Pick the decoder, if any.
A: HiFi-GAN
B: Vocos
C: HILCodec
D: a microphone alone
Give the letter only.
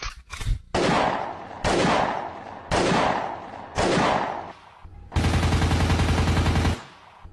D